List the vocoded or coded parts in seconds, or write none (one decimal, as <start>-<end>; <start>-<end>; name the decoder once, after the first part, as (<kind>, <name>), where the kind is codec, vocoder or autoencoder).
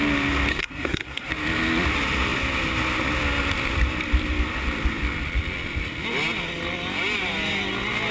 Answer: 0.5-1.3 (codec, SNAC)